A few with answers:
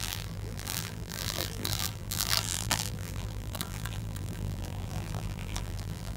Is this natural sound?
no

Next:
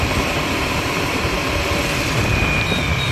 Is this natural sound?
yes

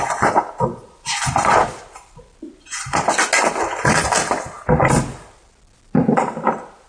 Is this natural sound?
yes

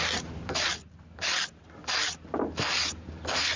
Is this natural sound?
yes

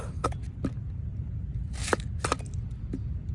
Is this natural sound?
yes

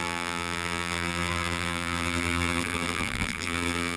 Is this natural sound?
no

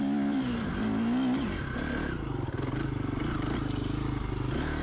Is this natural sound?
yes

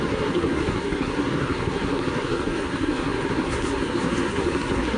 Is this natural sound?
no